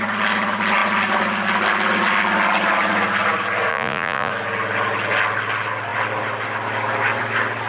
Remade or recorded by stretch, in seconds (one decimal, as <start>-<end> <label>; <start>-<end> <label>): 0.0-3.7 recorded; 3.7-4.3 remade; 4.3-7.7 recorded